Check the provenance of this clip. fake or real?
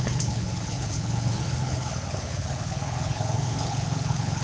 fake